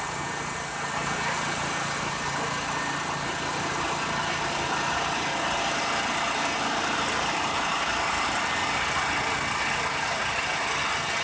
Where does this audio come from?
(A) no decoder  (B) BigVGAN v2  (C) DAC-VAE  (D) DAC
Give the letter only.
A